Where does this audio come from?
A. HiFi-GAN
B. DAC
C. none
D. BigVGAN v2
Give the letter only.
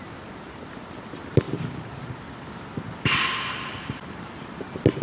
C